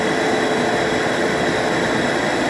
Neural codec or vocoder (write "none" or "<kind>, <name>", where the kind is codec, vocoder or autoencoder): none